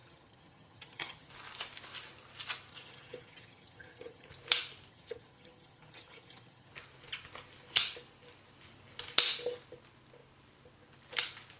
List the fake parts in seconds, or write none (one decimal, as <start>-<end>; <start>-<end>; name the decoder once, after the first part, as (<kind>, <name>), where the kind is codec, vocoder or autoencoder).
0.0-1.3 (vocoder, HiFi-GAN); 2.7-4.3; 4.9-6.7